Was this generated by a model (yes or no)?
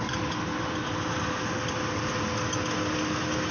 no